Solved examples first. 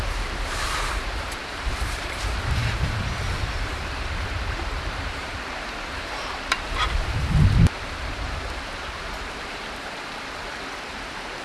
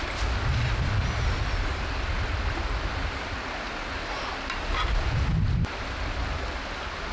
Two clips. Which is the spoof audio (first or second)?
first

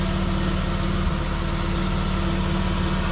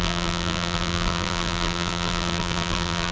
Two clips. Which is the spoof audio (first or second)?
second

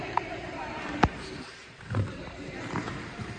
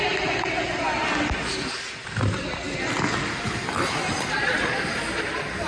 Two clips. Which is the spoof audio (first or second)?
first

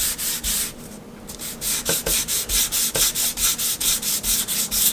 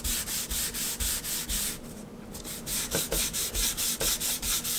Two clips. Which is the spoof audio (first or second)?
second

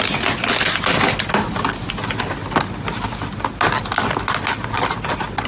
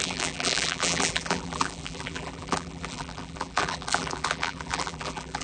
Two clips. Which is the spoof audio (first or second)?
second